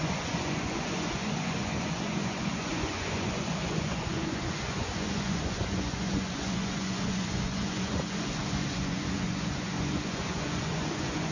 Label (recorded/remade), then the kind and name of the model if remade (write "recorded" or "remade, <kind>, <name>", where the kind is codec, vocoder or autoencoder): remade, vocoder, Vocos